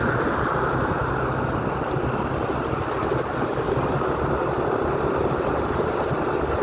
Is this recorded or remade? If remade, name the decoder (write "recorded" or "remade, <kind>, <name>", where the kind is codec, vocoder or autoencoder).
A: recorded